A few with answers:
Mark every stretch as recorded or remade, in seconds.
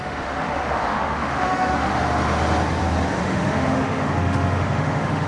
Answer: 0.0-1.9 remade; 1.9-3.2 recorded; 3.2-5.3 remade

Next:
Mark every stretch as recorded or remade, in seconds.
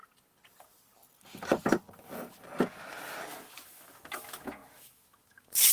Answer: 0.0-3.4 recorded; 3.4-5.7 remade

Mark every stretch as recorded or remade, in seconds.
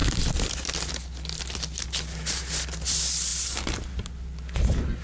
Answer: 0.0-5.0 recorded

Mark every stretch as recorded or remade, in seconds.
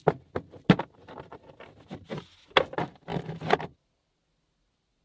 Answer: 0.0-5.0 recorded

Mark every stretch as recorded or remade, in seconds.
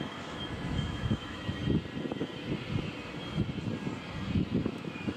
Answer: 0.0-1.6 remade; 1.6-4.7 recorded; 4.7-5.2 remade